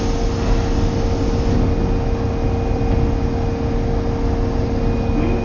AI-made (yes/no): no